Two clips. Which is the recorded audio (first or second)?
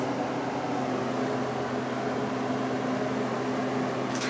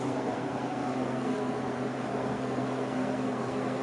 first